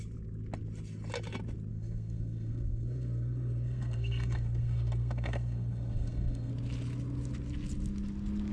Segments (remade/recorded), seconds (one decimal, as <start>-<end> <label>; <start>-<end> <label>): 0.0-1.7 recorded; 1.7-6.5 remade; 6.5-8.5 recorded